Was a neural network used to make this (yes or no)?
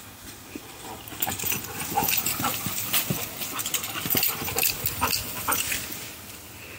no